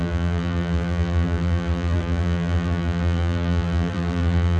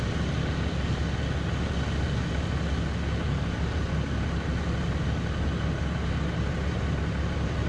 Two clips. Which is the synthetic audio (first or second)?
first